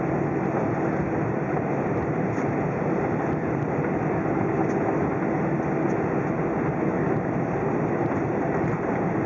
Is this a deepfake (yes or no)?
no